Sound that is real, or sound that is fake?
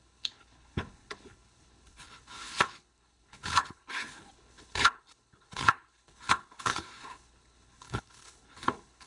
fake